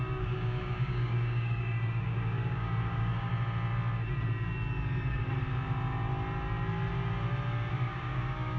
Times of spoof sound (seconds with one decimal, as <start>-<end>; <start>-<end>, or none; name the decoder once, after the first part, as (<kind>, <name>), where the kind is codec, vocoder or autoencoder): 0.0-3.3 (codec, DAC); 7.7-8.6